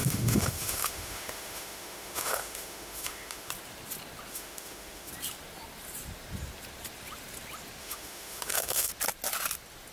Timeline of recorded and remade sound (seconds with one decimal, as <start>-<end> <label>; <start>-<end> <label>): 0.0-3.5 remade; 3.5-4.3 recorded; 4.3-5.1 remade; 5.1-7.8 recorded; 7.8-8.9 remade; 8.9-9.9 recorded